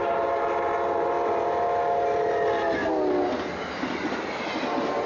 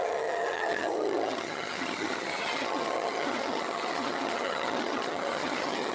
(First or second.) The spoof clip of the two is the second